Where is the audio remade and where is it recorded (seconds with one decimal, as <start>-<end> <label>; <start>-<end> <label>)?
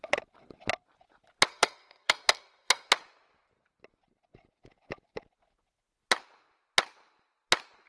0.0-1.5 recorded; 1.5-2.9 remade; 2.9-7.9 recorded